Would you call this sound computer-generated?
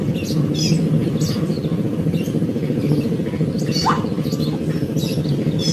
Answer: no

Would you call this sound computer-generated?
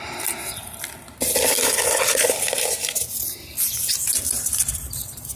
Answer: no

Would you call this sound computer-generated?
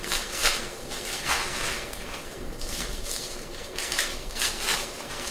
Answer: yes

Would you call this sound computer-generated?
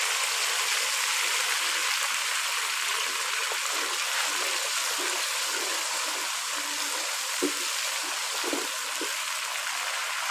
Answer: no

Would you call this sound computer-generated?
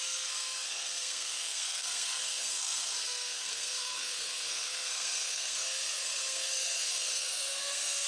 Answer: yes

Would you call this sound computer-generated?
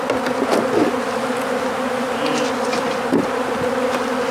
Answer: no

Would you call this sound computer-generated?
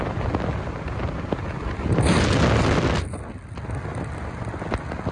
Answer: no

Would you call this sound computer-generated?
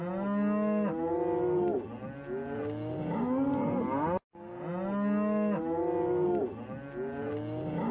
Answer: no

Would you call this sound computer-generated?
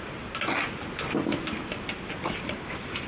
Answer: no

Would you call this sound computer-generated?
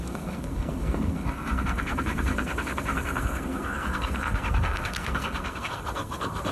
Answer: yes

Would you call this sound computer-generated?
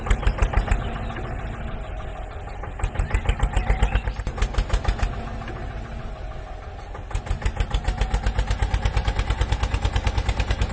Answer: no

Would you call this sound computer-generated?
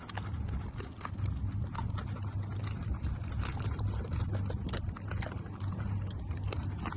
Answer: no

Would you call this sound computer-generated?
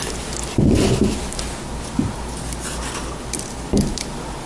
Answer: no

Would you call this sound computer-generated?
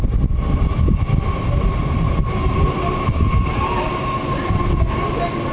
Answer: no